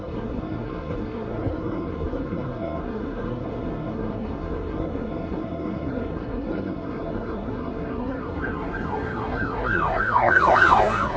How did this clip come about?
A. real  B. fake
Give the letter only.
B